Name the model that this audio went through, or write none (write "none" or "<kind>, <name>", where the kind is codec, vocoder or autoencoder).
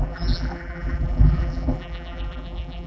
vocoder, BigVGAN v2